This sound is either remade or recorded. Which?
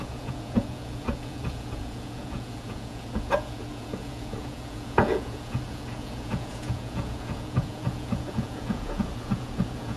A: remade